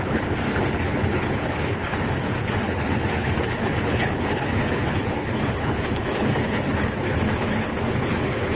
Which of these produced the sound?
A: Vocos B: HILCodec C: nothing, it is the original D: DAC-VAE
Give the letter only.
B